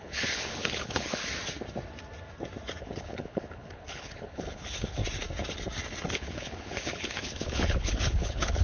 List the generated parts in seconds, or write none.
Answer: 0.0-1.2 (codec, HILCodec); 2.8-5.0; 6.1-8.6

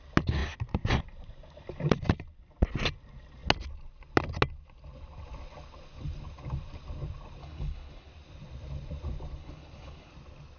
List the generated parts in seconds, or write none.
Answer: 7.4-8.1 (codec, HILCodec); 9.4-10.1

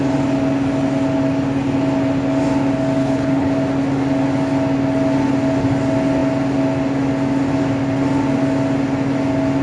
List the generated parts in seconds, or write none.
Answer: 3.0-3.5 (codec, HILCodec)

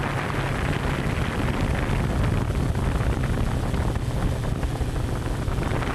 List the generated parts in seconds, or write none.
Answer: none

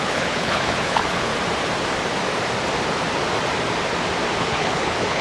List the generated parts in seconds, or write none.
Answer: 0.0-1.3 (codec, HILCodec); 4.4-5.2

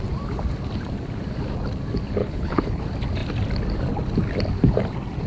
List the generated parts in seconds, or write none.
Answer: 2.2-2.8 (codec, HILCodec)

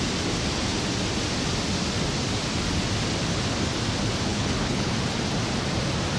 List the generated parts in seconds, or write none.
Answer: 4.3-4.9 (codec, HILCodec)